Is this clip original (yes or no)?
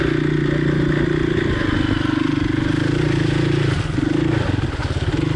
yes